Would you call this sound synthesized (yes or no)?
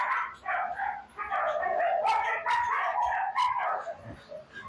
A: no